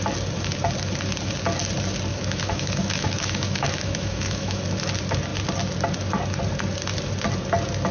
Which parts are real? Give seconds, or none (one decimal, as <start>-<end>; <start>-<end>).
0.0-2.1; 4.6-7.9